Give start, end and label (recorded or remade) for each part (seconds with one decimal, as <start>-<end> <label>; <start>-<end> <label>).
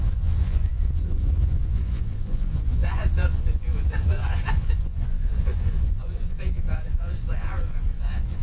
0.0-8.4 remade